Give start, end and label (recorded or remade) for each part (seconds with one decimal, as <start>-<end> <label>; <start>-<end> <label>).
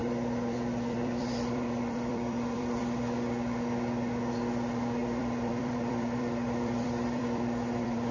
0.0-2.8 remade; 2.8-5.0 recorded; 5.0-8.1 remade